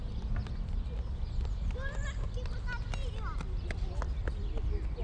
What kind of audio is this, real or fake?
real